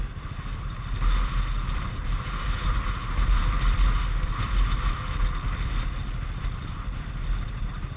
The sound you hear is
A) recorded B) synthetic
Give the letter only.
A